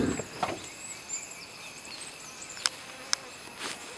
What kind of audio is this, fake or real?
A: real